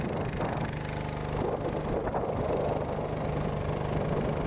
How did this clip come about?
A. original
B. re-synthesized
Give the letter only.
A